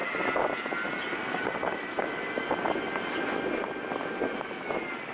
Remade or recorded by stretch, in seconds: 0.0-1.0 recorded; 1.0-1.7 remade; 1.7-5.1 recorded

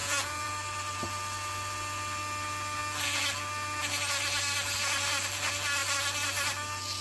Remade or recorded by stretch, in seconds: 0.0-0.5 remade; 0.5-7.0 recorded

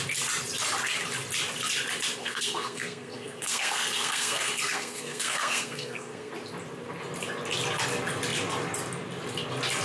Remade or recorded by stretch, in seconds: 0.0-2.2 recorded; 2.2-6.3 remade; 6.3-9.8 recorded

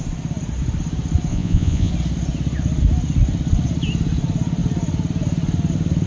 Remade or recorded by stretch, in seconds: 0.0-1.3 recorded; 1.3-1.9 remade; 1.9-6.1 recorded

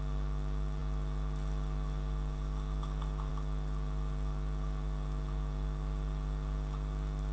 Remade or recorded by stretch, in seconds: 0.0-7.3 recorded

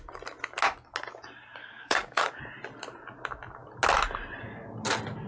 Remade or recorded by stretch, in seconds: 0.0-1.6 recorded; 1.6-2.4 remade; 2.4-5.3 recorded